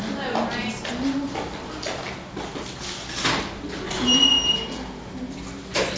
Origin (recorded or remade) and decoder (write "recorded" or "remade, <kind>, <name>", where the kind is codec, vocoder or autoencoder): recorded